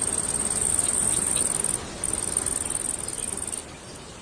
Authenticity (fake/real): real